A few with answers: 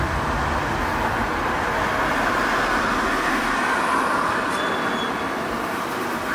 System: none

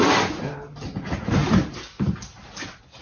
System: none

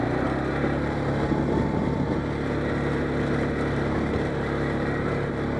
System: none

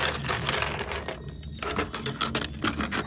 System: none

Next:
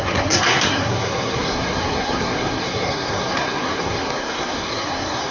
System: codec, SNAC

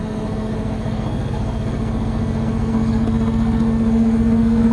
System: codec, SNAC